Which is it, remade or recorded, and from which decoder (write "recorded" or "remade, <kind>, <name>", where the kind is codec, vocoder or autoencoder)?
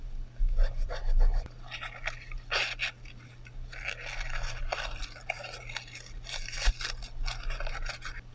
recorded